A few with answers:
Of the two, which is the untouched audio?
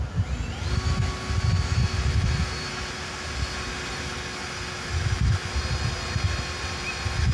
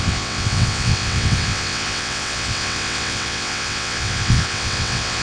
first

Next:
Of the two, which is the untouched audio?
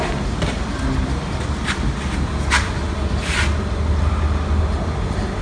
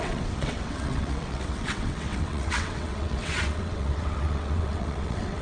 first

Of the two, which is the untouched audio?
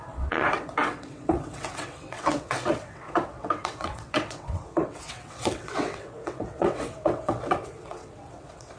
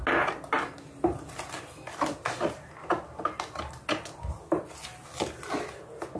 second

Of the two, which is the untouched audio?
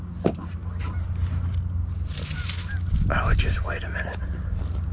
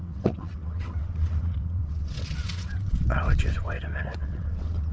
first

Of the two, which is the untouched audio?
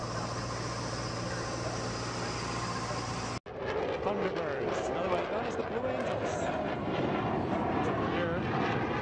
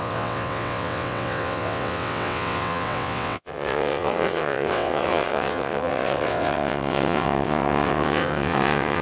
first